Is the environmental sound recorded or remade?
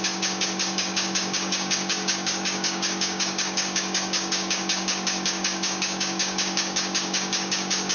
remade